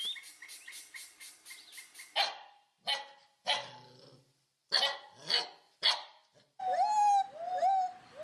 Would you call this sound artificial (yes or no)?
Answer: no